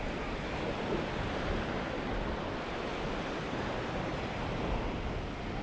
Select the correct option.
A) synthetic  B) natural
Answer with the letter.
B